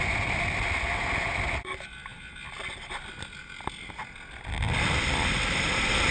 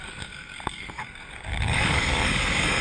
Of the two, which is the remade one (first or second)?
second